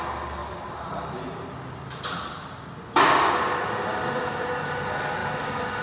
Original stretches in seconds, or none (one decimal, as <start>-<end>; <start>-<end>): 0.0-0.4; 2.6-5.8